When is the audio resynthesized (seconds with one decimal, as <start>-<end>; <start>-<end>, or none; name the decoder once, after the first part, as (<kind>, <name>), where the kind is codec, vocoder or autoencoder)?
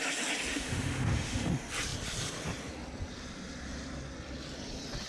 0.5-1.5 (autoencoder, DAC-VAE)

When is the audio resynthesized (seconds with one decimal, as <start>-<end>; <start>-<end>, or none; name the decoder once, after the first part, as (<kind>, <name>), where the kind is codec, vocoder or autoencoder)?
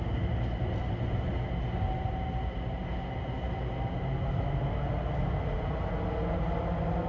none